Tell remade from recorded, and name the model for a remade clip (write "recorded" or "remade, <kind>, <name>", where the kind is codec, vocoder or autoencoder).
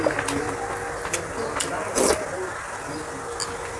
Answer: recorded